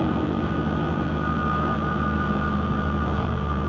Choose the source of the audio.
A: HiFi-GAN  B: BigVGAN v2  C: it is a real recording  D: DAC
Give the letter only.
B